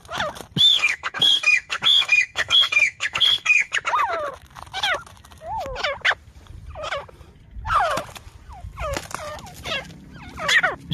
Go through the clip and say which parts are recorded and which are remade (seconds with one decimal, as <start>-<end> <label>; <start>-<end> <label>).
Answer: 0.0-0.7 recorded; 0.7-3.7 remade; 3.7-10.9 recorded